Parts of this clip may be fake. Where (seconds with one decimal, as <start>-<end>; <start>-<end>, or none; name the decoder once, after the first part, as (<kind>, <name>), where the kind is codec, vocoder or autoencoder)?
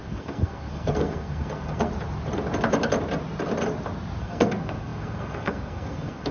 0.0-1.9 (codec, SNAC); 4.2-6.3